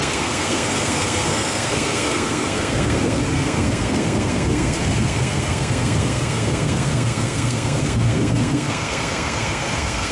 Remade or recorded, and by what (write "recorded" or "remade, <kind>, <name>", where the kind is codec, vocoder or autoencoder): remade, codec, SNAC